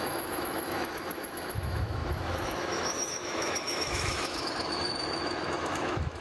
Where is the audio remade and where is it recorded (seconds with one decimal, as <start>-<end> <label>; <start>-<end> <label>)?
0.0-6.2 remade